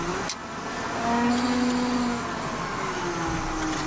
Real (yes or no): yes